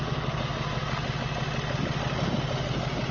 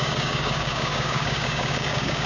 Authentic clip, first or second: first